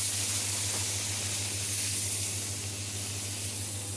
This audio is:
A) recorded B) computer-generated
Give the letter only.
A